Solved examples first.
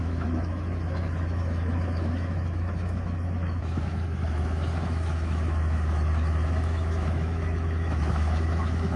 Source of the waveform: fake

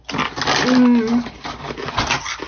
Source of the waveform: real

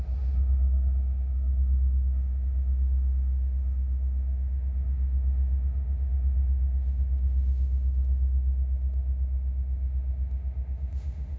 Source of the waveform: fake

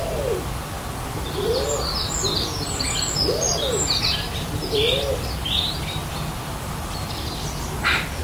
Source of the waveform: real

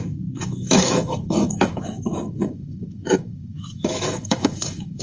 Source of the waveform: fake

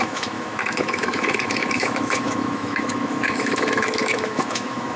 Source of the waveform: fake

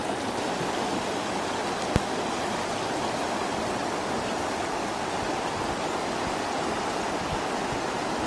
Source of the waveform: real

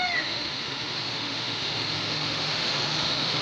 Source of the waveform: fake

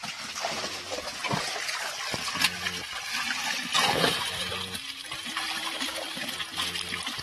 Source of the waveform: real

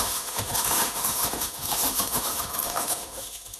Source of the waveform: fake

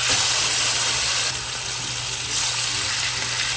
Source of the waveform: real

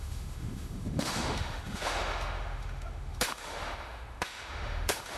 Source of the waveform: fake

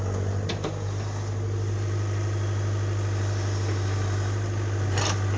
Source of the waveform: real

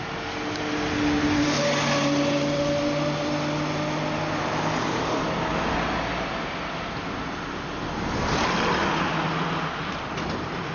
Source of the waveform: real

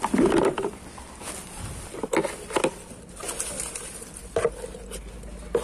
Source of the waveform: real